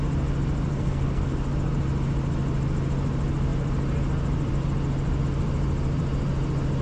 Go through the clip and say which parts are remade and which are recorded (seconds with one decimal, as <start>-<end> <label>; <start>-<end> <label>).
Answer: 0.0-0.7 recorded; 0.7-1.4 remade; 1.4-6.8 recorded